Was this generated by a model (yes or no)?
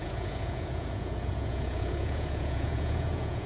yes